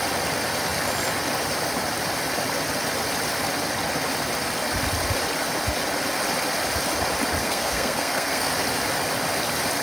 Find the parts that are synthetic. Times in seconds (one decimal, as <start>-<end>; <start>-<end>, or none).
7.4-8.5

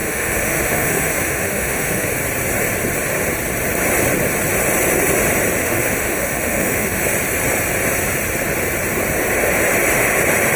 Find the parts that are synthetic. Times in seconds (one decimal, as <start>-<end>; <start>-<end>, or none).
0.0-2.1; 5.6-7.0

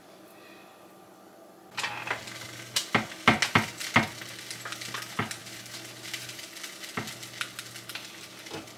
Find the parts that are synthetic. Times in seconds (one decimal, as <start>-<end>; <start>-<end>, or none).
5.4-6.4

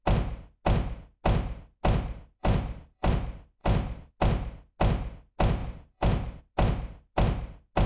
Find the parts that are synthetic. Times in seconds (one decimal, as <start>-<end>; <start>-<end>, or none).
2.4-3.1; 3.6-4.1; 5.6-6.4

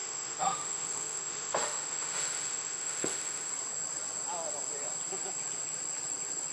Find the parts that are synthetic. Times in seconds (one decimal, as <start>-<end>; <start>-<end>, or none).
0.0-3.5

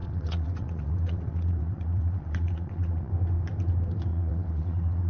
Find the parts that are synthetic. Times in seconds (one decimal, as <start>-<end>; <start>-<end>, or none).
0.0-3.1; 4.1-5.1

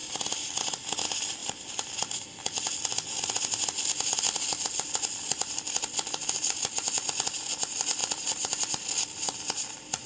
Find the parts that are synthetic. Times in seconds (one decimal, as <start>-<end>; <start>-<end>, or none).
0.0-0.5; 8.0-8.7